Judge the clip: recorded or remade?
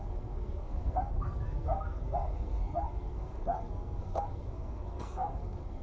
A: remade